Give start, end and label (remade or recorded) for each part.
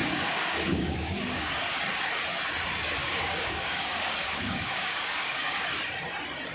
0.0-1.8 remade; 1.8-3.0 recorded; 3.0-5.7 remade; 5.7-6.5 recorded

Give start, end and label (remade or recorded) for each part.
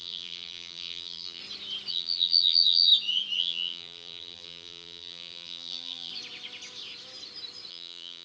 0.0-1.4 remade; 1.4-1.9 recorded; 1.9-2.9 remade; 2.9-3.4 recorded; 3.4-6.1 remade; 6.1-7.7 recorded; 7.7-8.2 remade